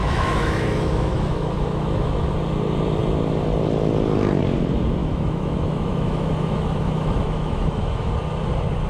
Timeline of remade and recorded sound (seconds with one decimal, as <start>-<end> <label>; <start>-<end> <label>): 0.0-2.3 remade; 2.3-5.0 recorded; 5.0-8.1 remade; 8.1-8.9 recorded